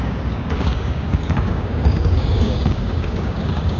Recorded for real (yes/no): no